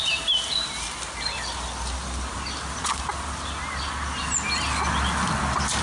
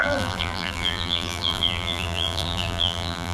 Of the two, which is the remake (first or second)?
second